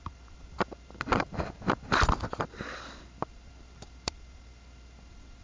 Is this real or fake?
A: fake